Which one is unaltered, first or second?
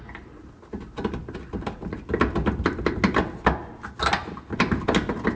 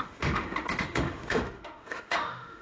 first